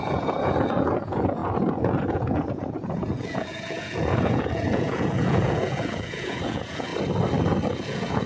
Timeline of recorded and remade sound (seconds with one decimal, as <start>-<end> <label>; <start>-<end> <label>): 0.0-6.9 remade; 6.9-7.7 recorded; 7.7-8.3 remade